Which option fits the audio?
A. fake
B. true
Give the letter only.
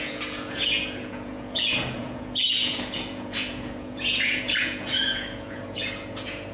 A